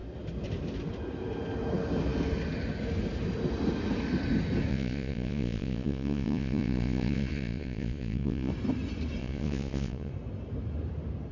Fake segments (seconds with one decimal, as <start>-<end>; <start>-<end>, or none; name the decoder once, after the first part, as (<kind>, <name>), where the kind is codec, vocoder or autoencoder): 4.7-8.5 (vocoder, Vocos); 9.2-10.1